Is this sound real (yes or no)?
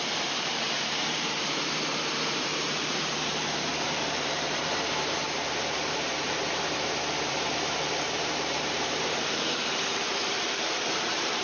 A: no